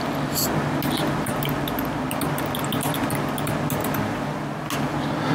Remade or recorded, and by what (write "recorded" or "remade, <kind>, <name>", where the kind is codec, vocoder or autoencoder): recorded